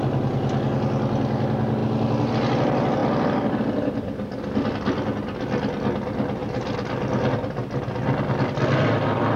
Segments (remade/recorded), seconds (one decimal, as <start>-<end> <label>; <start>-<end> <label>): 0.0-3.0 recorded; 3.0-3.6 remade; 3.6-6.4 recorded; 6.4-6.9 remade; 6.9-9.4 recorded